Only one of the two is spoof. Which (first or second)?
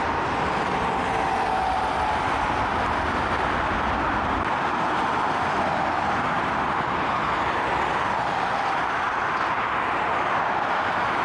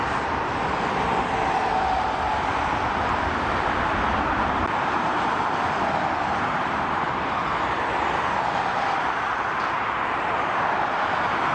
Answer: second